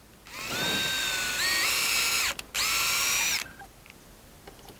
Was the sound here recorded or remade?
recorded